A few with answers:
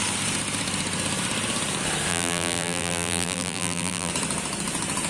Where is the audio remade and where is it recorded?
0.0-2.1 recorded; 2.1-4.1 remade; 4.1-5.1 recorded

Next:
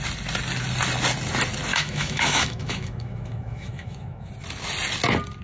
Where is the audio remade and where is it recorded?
0.0-1.7 recorded; 1.7-4.3 remade; 4.3-5.4 recorded